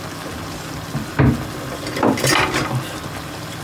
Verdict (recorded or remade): recorded